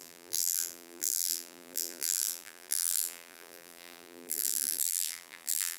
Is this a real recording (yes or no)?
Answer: no